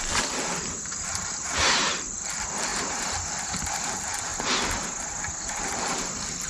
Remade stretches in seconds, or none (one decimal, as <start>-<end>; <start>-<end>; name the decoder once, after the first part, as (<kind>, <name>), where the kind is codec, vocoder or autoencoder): 0.0-4.3 (vocoder, BigVGAN v2); 5.4-6.5